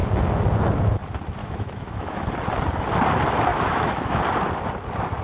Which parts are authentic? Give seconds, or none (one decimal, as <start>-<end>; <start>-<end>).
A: 0.0-1.4; 2.2-3.5; 4.2-5.2